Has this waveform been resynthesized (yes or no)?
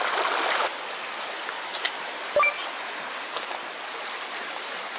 no